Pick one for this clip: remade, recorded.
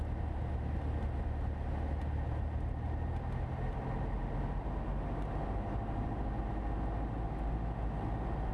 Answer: recorded